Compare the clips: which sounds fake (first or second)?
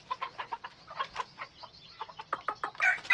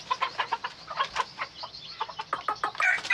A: first